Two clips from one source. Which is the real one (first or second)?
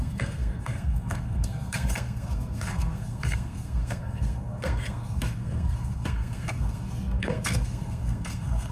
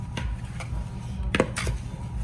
second